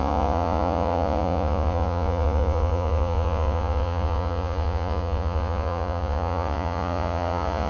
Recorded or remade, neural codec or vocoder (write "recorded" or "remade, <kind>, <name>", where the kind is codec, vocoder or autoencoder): remade, vocoder, Vocos